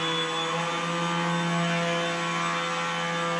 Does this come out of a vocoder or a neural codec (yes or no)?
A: no